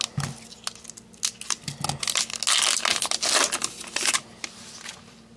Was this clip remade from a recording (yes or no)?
no